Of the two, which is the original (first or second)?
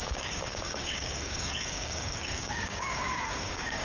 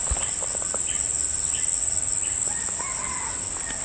second